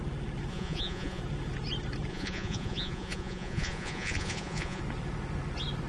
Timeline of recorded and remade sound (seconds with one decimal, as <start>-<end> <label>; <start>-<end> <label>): 0.0-0.5 recorded; 0.5-1.2 remade; 1.2-2.1 recorded; 2.1-4.8 remade; 4.8-5.9 recorded